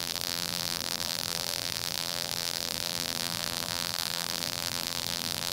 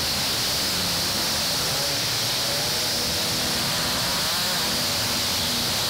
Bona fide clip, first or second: second